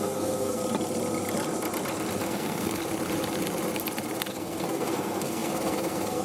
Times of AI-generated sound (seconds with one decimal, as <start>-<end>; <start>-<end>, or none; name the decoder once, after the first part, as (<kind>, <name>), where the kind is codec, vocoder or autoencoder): 0.0-0.6 (codec, SNAC); 2.2-2.8; 4.3-6.2